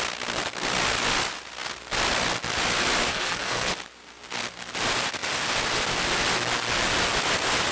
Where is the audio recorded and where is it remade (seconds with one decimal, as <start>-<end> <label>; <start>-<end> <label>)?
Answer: 0.0-3.1 recorded; 3.1-3.7 remade; 3.7-7.7 recorded